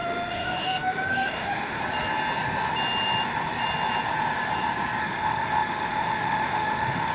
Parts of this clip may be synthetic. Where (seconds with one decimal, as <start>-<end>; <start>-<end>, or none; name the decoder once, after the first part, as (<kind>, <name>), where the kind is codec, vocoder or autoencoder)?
0.0-1.8 (autoencoder, DAC-VAE); 5.0-7.1